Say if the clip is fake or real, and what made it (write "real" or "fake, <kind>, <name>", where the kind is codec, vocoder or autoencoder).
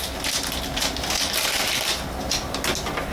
real